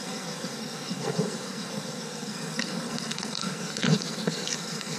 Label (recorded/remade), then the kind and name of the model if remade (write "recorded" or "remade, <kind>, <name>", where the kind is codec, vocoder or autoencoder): remade, codec, SNAC